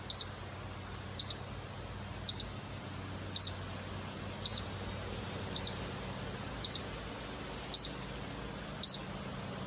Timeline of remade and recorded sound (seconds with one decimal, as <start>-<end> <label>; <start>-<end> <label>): 0.0-4.5 recorded; 4.5-5.9 remade; 5.9-9.7 recorded